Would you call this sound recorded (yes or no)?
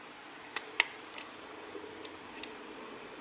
yes